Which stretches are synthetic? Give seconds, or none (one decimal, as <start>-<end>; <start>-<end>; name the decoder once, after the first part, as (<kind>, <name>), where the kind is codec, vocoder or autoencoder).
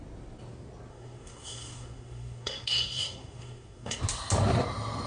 0.9-4.0 (codec, SNAC)